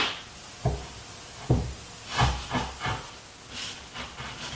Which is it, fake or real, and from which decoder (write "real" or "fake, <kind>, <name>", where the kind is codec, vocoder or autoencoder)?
real